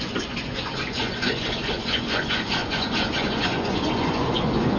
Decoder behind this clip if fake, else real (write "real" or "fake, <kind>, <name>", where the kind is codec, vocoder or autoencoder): fake, vocoder, Vocos